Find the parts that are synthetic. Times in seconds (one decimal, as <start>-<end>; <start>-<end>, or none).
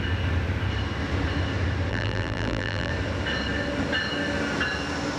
1.9-2.9